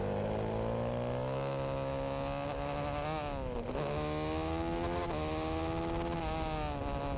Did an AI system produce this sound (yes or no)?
no